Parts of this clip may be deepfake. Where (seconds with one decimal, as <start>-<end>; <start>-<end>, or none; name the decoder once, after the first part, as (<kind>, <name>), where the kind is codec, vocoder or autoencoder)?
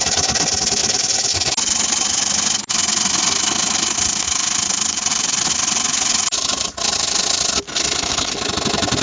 none